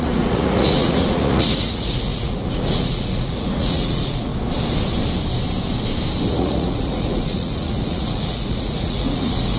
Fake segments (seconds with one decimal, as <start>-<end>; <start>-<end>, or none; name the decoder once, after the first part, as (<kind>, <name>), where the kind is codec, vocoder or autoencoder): 0.0-4.3 (vocoder, Vocos); 6.3-9.6